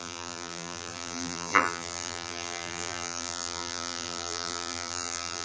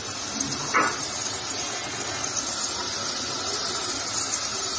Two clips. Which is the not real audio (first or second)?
first